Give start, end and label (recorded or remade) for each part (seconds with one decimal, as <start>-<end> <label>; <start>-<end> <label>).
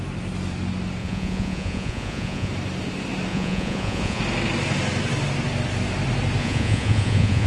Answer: 0.0-1.0 recorded; 1.0-2.5 remade; 2.5-3.3 recorded; 3.3-4.2 remade; 4.2-6.4 recorded; 6.4-7.5 remade